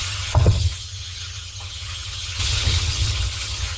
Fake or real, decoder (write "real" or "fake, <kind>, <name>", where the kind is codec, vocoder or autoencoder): fake, vocoder, HiFi-GAN